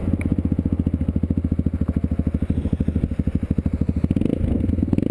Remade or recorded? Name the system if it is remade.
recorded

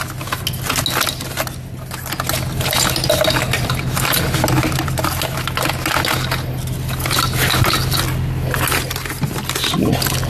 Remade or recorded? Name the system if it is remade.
recorded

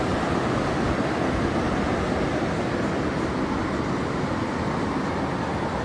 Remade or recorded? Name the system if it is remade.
recorded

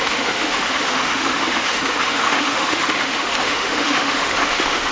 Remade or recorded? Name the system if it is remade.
remade, autoencoder, DAC-VAE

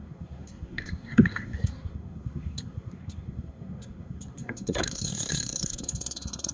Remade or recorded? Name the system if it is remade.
remade, codec, SNAC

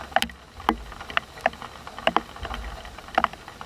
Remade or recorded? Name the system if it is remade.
recorded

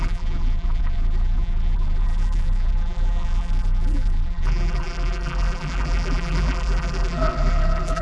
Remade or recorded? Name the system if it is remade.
remade, vocoder, BigVGAN v2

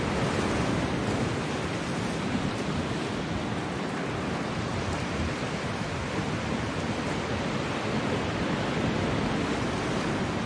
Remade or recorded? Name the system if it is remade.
recorded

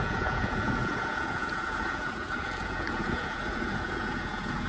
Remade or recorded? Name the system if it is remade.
remade, vocoder, Vocos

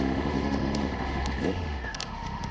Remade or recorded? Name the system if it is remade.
remade, autoencoder, DAC-VAE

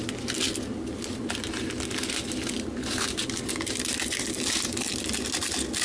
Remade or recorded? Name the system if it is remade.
recorded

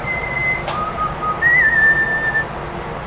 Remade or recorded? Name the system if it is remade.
recorded